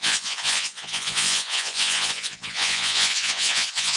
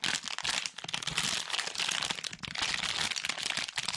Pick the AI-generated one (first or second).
first